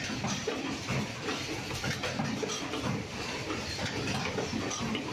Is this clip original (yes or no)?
no